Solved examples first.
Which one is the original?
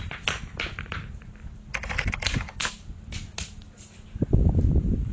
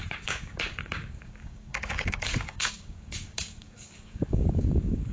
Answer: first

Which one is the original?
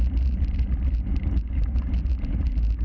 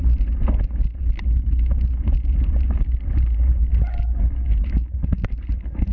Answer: second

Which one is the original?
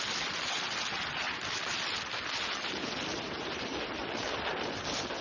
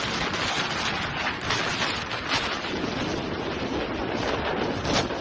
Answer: second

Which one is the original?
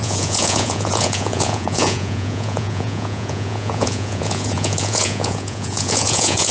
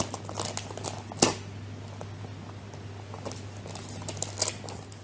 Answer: second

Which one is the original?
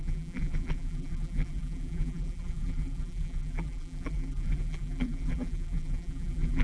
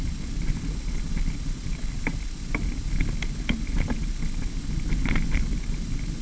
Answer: second